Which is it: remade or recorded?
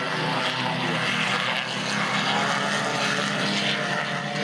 recorded